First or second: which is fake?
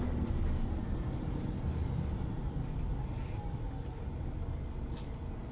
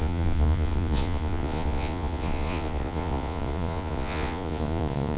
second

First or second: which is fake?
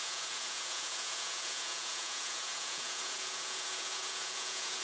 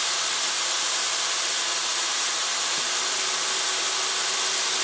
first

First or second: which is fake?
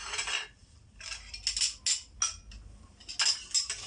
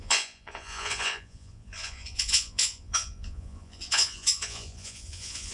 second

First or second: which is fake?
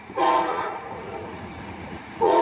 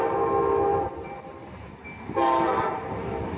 first